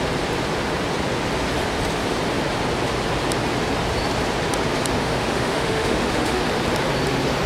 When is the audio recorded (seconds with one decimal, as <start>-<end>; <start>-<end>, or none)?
0.0-5.0; 6.4-7.5